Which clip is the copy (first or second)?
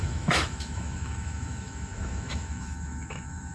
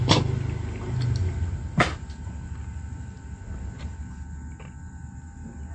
first